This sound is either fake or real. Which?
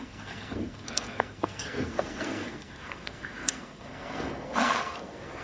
fake